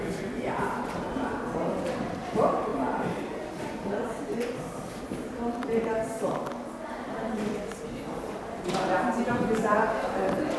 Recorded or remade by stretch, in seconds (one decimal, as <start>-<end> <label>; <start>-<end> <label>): 0.0-10.6 remade